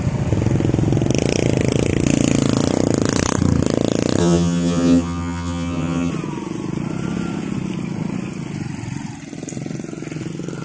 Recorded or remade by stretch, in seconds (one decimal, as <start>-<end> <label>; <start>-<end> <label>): 0.0-4.2 recorded; 4.2-6.1 remade; 6.1-10.6 recorded